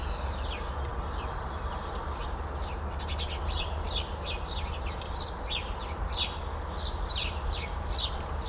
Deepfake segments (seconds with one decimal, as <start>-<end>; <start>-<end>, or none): 7.2-7.9